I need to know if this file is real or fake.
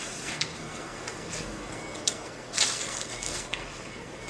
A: fake